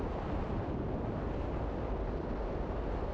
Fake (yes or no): no